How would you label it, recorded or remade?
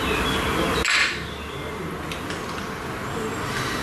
recorded